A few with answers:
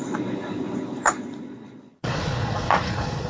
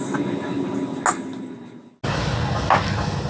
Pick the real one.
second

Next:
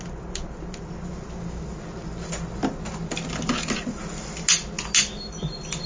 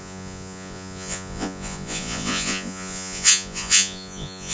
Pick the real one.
first